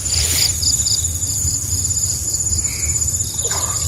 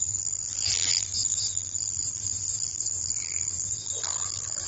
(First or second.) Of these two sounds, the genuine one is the first